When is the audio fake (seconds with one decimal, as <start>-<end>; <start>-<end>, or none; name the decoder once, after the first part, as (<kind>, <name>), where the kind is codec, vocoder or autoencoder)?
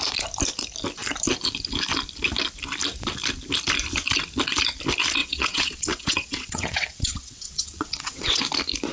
5.2-8.4 (vocoder, WaveNeXt)